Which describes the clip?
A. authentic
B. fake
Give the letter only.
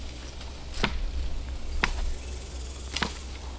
A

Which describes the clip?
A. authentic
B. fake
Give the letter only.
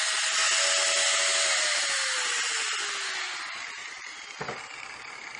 A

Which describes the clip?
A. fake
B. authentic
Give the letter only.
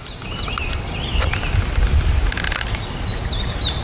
B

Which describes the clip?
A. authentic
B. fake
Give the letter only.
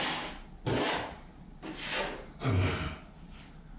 A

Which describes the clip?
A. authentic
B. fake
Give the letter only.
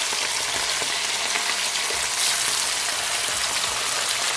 A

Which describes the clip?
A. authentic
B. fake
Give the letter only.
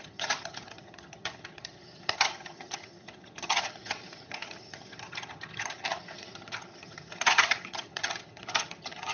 B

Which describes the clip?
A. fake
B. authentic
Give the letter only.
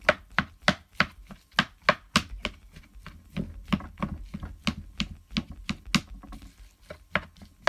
B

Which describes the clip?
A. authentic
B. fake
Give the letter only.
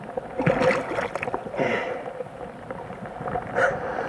A